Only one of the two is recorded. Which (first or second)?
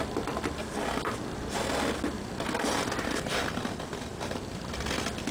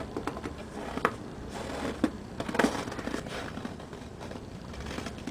first